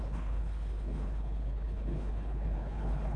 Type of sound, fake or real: fake